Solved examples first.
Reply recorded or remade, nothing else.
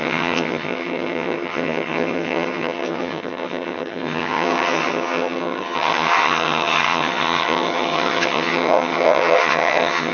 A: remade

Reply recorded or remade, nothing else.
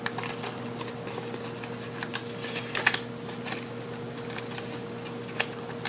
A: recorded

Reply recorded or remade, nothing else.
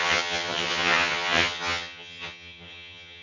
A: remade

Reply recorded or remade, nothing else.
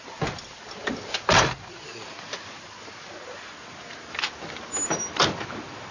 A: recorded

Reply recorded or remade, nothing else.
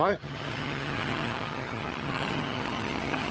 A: remade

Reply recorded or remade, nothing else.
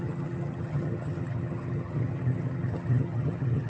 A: remade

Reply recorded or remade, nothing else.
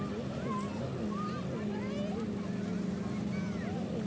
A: recorded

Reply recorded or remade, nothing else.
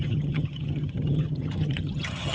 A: remade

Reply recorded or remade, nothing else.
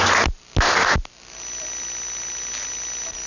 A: recorded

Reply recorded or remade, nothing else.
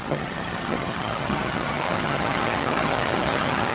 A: remade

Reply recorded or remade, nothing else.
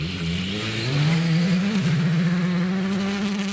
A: recorded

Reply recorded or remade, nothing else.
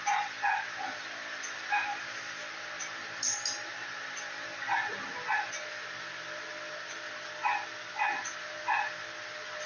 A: recorded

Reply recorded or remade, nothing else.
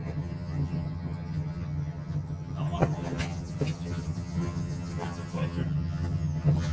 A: remade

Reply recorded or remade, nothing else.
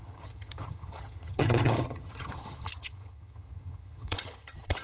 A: remade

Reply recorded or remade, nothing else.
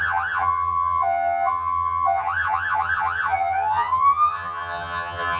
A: remade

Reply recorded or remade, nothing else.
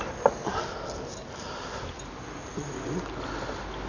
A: recorded